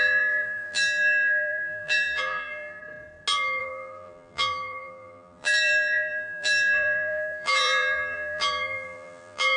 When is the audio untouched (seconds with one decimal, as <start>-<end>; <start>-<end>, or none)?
2.8-3.6